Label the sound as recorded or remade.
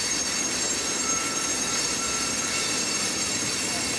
remade